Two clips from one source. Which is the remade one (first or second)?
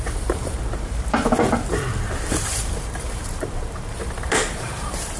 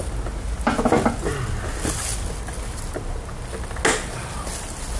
first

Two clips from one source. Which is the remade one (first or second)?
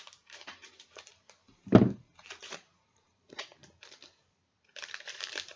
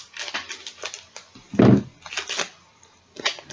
first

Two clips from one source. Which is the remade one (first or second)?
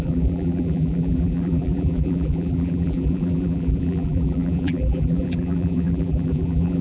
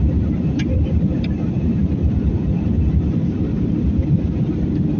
first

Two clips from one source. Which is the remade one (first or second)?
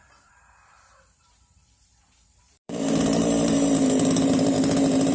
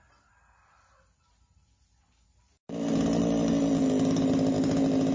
first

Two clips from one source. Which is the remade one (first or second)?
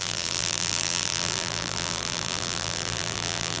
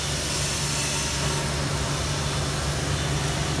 first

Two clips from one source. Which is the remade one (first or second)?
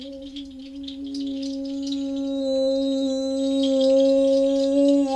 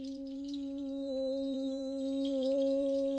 second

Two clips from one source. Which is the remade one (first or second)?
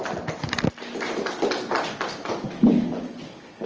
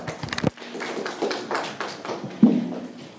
first